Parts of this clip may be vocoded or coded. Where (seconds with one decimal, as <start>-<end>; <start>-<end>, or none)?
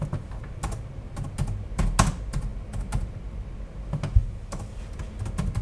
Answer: none